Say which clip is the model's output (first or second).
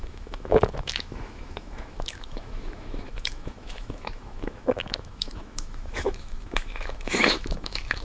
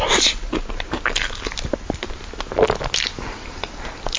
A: first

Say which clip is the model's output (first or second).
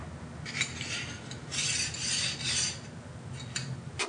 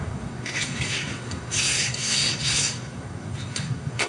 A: second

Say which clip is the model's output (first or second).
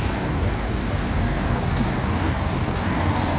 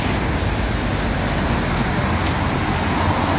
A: first